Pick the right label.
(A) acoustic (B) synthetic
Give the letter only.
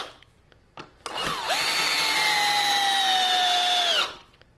A